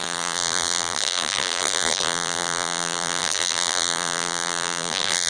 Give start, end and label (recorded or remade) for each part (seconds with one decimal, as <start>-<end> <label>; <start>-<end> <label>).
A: 0.0-5.3 remade